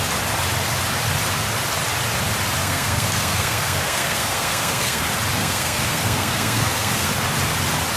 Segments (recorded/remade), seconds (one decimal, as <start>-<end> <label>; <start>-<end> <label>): 0.0-2.6 recorded; 2.6-5.0 remade; 5.0-5.4 recorded; 5.4-7.1 remade; 7.1-8.0 recorded